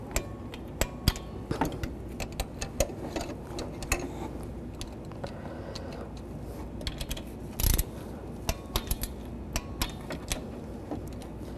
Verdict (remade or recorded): recorded